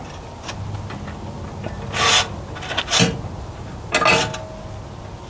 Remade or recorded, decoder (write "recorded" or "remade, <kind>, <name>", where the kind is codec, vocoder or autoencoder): recorded